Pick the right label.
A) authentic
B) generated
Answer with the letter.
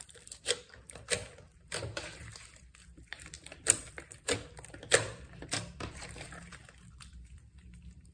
B